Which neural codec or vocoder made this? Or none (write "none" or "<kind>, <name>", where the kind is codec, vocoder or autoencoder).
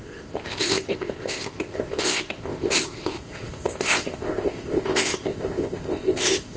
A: codec, ZipCodec